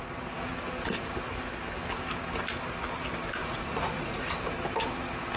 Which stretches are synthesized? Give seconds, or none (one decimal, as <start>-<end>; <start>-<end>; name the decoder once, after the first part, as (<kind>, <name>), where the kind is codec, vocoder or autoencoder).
3.4-4.3 (vocoder, Vocos)